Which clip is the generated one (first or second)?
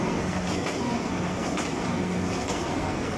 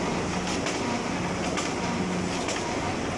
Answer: first